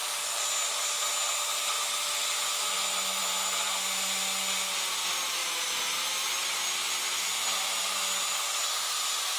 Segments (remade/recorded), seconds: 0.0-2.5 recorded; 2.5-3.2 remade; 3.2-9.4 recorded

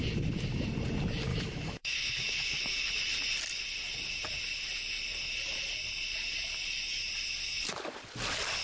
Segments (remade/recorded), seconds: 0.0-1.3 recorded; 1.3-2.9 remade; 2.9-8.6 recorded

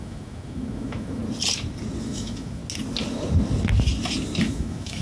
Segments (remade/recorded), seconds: 0.0-1.2 remade; 1.2-2.0 recorded; 2.0-2.6 remade; 2.6-4.4 recorded; 4.4-5.0 remade

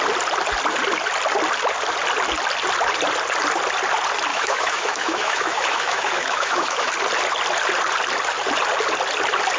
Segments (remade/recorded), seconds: 0.0-4.3 recorded; 4.3-6.9 remade; 6.9-9.6 recorded